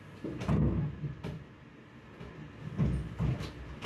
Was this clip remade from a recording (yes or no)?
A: no